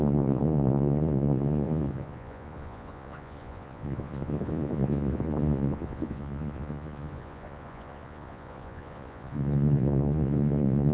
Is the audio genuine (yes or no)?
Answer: no